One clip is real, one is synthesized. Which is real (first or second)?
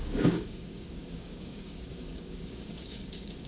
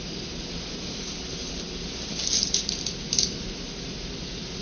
second